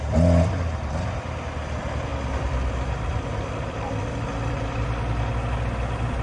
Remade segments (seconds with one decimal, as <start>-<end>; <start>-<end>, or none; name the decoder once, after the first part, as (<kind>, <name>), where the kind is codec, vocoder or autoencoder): 2.1-5.0 (vocoder, BigVGAN v2)